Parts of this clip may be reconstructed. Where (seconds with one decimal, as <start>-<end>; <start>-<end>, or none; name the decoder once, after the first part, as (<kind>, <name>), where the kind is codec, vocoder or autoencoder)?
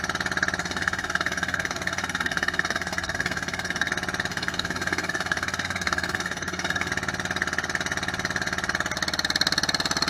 0.6-3.9 (codec, SNAC); 4.3-6.9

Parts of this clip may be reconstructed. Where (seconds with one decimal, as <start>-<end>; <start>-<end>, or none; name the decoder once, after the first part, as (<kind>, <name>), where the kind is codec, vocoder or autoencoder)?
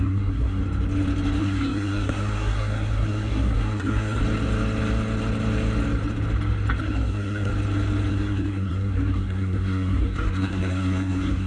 0.0-0.6 (codec, SNAC); 1.4-4.2; 6.8-7.5; 8.1-11.5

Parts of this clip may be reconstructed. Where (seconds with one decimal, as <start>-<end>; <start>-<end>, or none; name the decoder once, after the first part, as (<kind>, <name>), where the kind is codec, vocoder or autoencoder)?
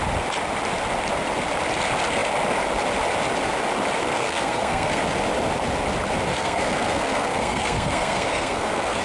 4.0-5.0 (codec, SNAC); 6.3-9.0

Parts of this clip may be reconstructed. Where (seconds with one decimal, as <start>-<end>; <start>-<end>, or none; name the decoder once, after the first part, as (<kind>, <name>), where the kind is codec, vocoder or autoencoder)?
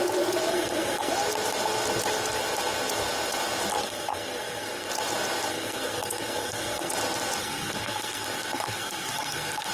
0.5-1.1 (codec, SNAC); 3.8-4.9; 5.5-6.9; 7.4-9.7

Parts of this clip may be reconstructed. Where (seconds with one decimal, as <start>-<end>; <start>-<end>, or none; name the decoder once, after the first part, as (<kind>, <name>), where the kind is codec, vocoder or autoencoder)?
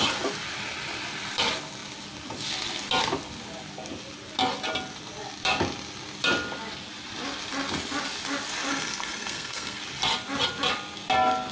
8.7-9.8 (codec, SNAC)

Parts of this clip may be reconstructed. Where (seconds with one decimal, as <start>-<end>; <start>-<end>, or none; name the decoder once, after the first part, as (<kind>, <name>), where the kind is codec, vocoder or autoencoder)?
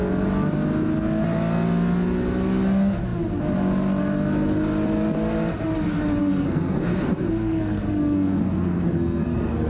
6.2-9.7 (codec, SNAC)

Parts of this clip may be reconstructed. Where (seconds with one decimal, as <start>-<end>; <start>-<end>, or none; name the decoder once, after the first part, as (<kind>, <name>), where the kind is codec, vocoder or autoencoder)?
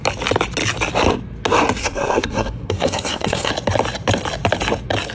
1.8-3.5 (codec, SNAC)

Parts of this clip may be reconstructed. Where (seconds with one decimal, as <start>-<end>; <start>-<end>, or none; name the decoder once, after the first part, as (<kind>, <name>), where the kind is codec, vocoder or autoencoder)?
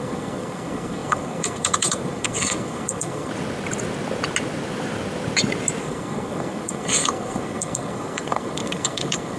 0.0-3.3 (codec, SNAC); 5.8-9.4